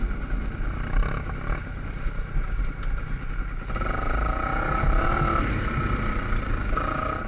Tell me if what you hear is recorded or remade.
recorded